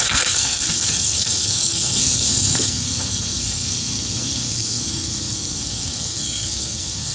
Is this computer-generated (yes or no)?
yes